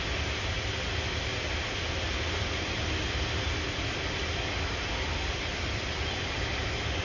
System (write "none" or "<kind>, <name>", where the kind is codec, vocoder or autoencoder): none